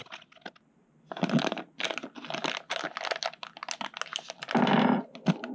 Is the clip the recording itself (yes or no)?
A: yes